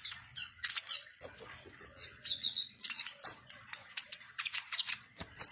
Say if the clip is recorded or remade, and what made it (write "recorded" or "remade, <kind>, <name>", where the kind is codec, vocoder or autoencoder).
remade, vocoder, Vocos